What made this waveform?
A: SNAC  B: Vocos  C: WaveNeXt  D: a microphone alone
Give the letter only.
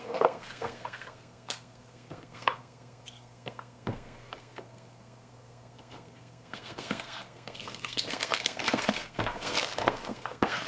A